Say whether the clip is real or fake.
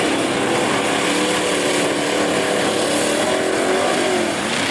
real